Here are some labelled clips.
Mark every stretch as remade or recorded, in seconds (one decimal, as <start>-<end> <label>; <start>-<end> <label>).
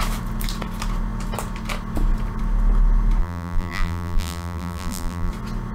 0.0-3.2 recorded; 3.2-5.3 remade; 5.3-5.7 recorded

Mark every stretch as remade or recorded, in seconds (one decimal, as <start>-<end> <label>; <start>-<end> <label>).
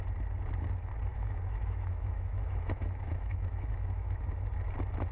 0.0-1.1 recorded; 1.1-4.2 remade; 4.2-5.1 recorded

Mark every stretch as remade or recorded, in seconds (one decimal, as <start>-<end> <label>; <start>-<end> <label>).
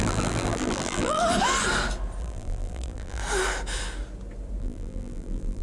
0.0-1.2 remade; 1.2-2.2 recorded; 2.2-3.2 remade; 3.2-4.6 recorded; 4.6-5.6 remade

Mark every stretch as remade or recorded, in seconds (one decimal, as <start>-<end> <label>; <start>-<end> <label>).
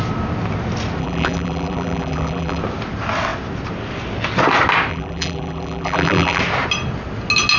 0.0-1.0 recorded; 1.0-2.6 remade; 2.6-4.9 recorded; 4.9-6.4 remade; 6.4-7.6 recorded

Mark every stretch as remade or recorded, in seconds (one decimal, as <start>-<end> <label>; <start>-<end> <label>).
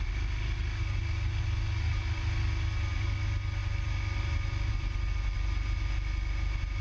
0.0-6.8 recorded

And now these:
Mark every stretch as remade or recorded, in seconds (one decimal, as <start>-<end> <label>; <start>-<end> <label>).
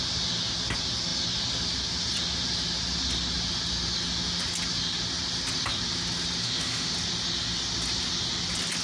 0.0-6.4 recorded; 6.4-6.9 remade; 6.9-8.8 recorded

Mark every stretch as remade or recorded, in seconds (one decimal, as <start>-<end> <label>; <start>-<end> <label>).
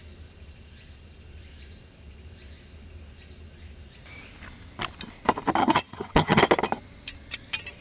0.0-5.6 recorded; 5.6-6.4 remade; 6.4-7.8 recorded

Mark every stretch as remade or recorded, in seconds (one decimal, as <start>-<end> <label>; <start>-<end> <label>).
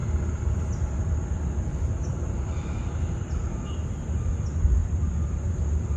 0.0-1.7 recorded; 1.7-3.7 remade; 3.7-4.8 recorded; 4.8-5.5 remade; 5.5-6.0 recorded